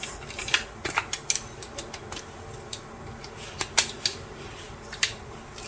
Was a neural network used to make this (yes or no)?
no